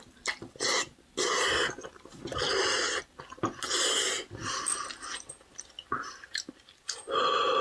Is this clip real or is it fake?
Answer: real